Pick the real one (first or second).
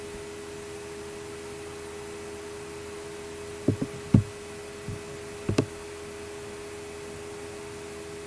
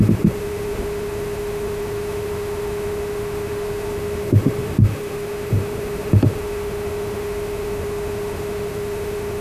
first